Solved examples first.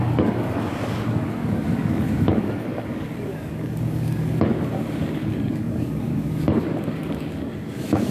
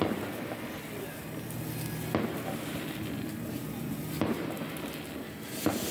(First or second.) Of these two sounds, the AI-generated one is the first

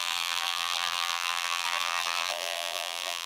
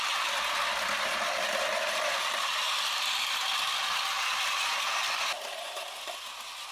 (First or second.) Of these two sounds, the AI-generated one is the first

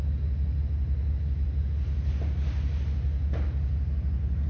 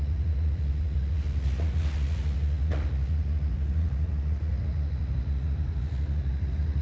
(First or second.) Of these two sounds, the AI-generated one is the second